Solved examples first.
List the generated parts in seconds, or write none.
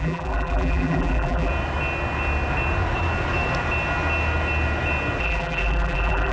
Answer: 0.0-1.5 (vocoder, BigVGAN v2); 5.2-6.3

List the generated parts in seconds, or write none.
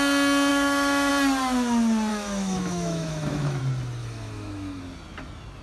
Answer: 0.5-1.1 (autoencoder, DAC-VAE); 2.1-3.6; 4.0-4.8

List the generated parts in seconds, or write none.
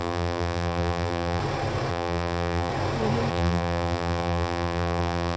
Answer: 0.0-1.4 (vocoder, BigVGAN v2); 1.9-2.7; 3.3-5.4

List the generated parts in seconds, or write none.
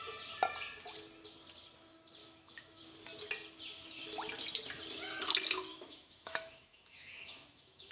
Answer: 2.2-2.8 (autoencoder, DAC-VAE); 5.7-7.9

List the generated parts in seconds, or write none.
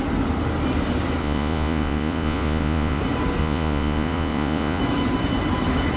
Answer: 1.2-3.0 (vocoder, Vocos); 3.4-4.8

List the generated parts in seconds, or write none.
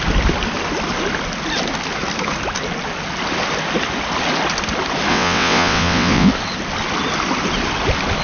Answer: 5.1-6.3 (vocoder, WaveNeXt)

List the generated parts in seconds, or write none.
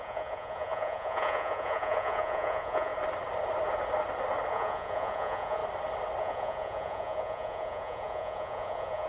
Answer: 0.0-2.9 (vocoder, Vocos); 4.5-5.6; 6.2-9.1